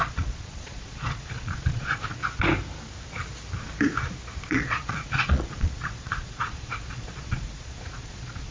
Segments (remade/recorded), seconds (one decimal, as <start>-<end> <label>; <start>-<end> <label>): 0.0-2.2 remade; 2.2-4.4 recorded; 4.4-8.5 remade